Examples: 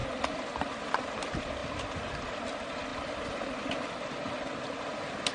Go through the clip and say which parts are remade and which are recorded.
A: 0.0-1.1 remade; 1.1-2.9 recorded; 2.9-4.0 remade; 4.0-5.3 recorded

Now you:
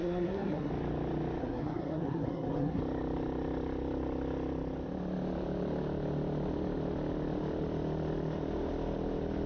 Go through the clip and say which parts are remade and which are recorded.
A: 0.0-0.7 remade; 0.7-1.4 recorded; 1.4-2.8 remade; 2.8-9.5 recorded

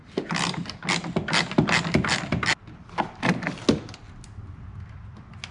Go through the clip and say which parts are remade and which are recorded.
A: 0.0-5.5 recorded

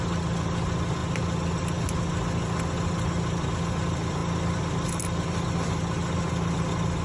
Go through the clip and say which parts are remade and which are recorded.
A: 0.0-7.0 recorded